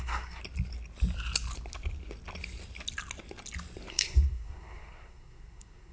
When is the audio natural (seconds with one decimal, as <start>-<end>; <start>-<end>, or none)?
0.4-3.9